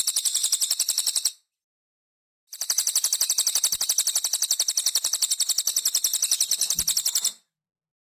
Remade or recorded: recorded